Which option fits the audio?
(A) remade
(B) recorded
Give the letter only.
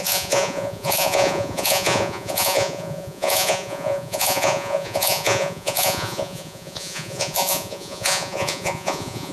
A